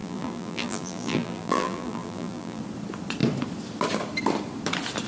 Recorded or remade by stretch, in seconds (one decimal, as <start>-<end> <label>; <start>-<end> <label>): 0.0-2.6 remade; 2.6-5.1 recorded